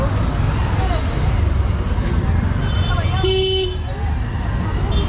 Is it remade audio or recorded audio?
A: recorded